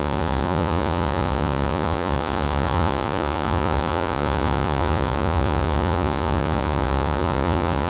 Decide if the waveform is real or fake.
fake